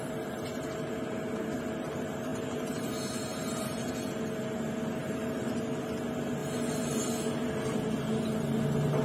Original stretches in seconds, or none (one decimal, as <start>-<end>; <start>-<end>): 0.0-2.3; 2.9-3.3; 3.9-5.0; 5.6-6.4; 7.0-9.0